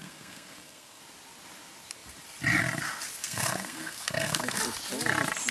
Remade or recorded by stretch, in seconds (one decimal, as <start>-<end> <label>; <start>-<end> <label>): 0.0-1.0 remade; 1.0-3.2 recorded; 3.2-4.6 remade; 4.6-5.5 recorded

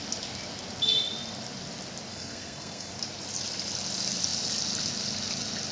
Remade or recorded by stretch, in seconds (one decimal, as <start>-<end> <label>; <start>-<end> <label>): 0.0-2.1 recorded; 2.1-2.9 remade; 2.9-5.7 recorded

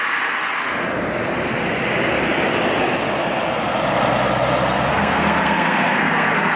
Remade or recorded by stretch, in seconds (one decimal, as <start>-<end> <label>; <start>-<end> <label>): 0.0-4.9 recorded; 4.9-6.6 remade

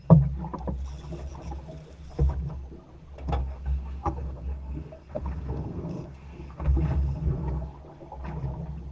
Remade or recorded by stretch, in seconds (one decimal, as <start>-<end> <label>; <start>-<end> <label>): 0.0-3.4 recorded; 3.4-7.7 remade; 7.7-8.9 recorded

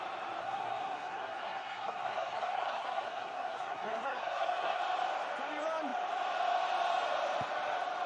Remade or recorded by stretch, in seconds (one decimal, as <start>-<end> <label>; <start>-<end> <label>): 0.0-0.4 recorded; 0.4-4.8 remade; 4.8-8.1 recorded

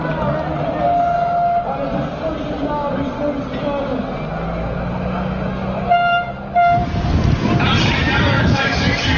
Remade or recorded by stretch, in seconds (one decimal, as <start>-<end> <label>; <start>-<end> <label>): 0.0-9.2 recorded

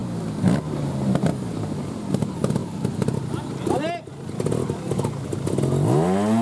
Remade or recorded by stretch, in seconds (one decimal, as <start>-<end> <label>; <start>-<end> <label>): 0.0-6.4 recorded